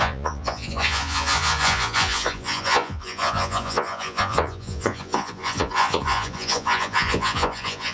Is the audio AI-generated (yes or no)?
yes